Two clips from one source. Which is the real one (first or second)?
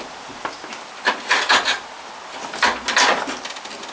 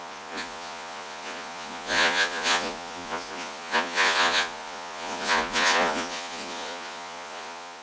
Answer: first